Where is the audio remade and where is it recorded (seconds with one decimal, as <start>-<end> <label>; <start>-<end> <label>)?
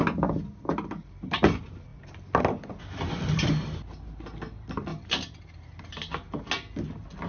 0.0-7.3 recorded